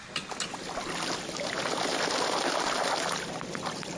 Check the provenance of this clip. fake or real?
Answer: real